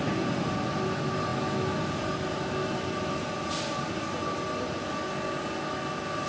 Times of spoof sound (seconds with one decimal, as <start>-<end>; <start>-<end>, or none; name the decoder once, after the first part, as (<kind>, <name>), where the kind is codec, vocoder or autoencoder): none